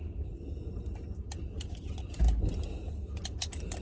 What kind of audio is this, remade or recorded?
recorded